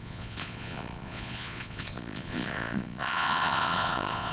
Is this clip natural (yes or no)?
no